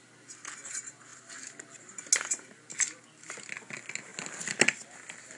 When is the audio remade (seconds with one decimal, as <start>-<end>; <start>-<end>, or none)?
none